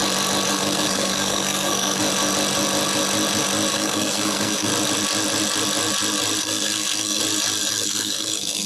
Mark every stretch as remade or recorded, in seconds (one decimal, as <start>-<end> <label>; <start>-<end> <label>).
0.0-0.5 recorded; 0.5-2.0 remade; 2.0-3.7 recorded; 3.7-4.7 remade; 4.7-6.4 recorded; 6.4-7.2 remade; 7.2-7.7 recorded; 7.7-8.7 remade